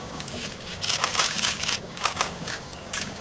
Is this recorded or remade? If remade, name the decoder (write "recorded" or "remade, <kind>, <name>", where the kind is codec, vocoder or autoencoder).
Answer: remade, codec, DAC